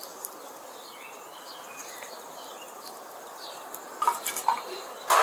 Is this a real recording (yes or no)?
yes